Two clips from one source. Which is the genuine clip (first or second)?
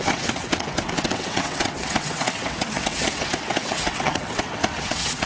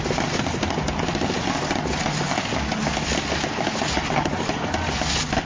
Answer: second